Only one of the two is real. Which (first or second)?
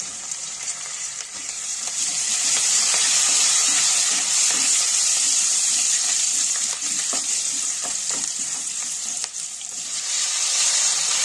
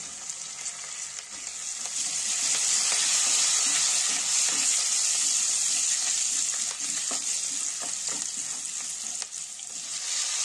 second